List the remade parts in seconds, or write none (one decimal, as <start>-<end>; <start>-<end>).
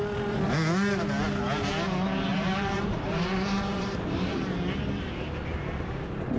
2.3-4.4